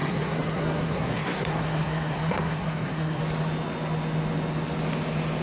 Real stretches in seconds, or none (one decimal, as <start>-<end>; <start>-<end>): 3.2-5.4